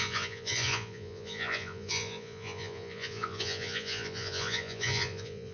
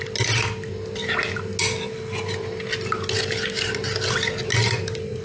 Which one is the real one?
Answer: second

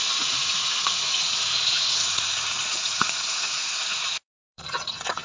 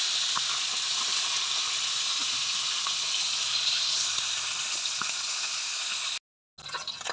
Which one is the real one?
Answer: second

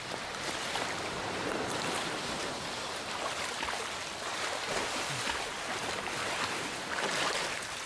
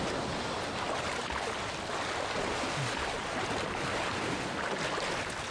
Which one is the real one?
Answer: second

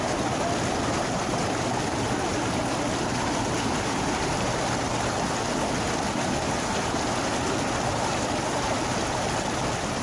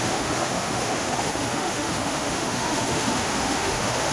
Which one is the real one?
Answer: first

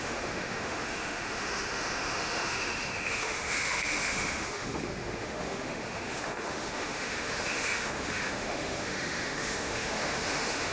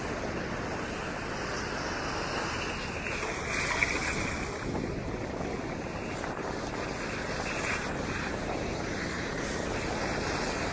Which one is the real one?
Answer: second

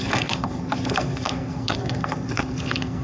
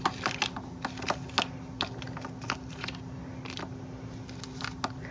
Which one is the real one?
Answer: second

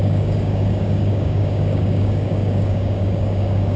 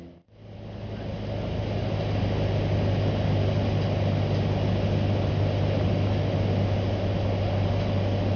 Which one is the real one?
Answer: second